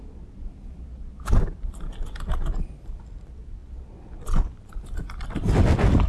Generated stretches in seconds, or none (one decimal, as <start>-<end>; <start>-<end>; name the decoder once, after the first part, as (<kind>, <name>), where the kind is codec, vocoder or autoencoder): none